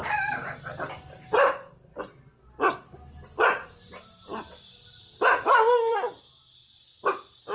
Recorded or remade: remade